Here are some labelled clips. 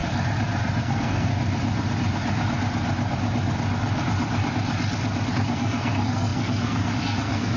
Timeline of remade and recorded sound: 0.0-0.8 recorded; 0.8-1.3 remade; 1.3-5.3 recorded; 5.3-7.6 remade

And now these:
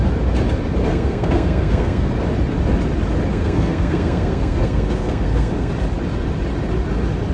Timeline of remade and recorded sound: 0.0-0.8 recorded; 0.8-2.1 remade; 2.1-3.3 recorded; 3.3-5.7 remade; 5.7-7.3 recorded

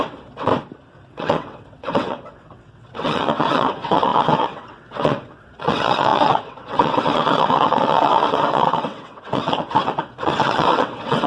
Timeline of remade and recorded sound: 0.0-0.5 remade; 0.5-1.1 recorded; 1.1-11.3 remade

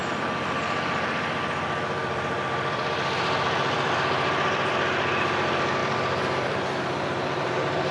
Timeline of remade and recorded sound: 0.0-0.9 remade; 0.9-2.0 recorded; 2.0-5.1 remade; 5.1-5.8 recorded; 5.8-7.9 remade

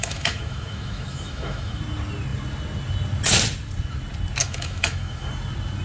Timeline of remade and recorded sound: 0.0-1.8 remade; 1.8-4.4 recorded; 4.4-5.3 remade; 5.3-5.8 recorded

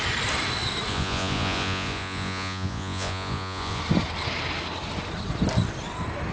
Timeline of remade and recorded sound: 0.0-0.9 recorded; 0.9-3.8 remade; 3.8-6.3 recorded